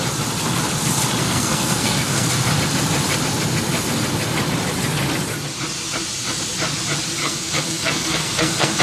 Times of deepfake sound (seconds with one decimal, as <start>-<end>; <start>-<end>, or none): 1.2-2.3; 7.2-8.8